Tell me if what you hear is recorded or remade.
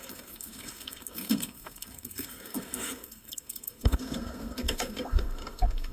remade